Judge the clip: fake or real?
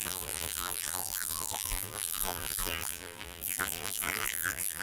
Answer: fake